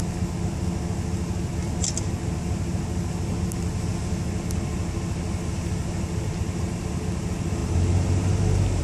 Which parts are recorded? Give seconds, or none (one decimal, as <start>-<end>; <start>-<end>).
0.0-8.8